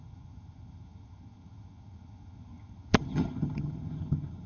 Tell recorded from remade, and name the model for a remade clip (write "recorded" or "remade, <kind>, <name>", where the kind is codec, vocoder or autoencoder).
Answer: remade, vocoder, HiFi-GAN